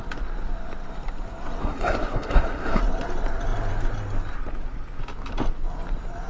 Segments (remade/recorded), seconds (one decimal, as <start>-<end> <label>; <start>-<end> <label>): 0.0-1.6 recorded; 1.6-2.8 remade; 2.8-6.3 recorded